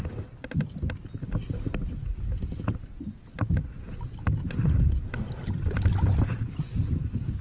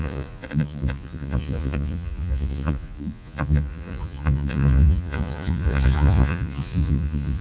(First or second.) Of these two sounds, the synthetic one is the second